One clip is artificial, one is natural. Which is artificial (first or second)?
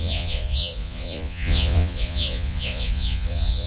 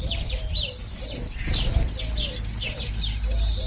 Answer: first